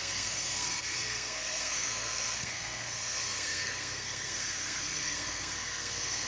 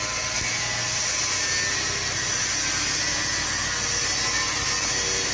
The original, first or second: second